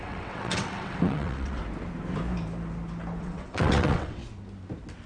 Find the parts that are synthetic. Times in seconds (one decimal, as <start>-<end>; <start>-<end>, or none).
0.0-1.6; 3.2-4.2